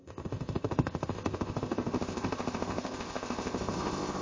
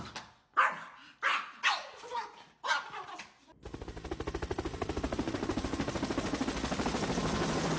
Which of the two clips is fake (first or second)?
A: first